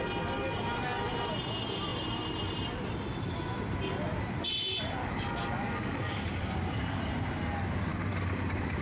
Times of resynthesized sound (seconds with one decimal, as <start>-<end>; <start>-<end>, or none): 5.0-7.1; 7.9-8.8

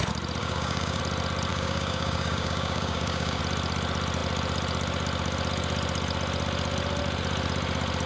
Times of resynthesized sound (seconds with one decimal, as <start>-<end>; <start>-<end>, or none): 0.4-1.0; 1.5-3.4

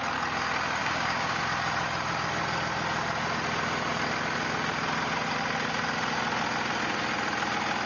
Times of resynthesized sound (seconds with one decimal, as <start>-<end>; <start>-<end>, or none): 0.8-1.4

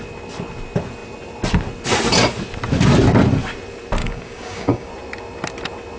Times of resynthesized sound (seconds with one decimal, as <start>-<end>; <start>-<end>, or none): 4.0-4.9

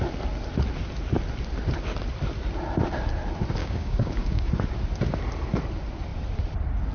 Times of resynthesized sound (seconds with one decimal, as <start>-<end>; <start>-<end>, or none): 3.6-4.5

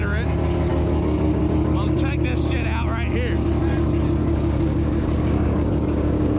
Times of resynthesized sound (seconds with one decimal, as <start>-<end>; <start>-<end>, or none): 0.7-1.4; 4.2-6.4

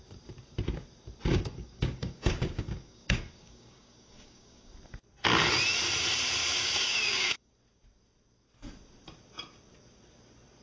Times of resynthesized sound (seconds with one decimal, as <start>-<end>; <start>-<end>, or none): 1.3-4.7; 6.6-7.5

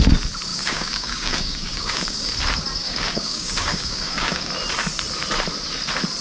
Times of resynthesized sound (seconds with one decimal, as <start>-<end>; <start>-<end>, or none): 0.5-2.3; 2.8-4.5